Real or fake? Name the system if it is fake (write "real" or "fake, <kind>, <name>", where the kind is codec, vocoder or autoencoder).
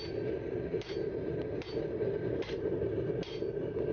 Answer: real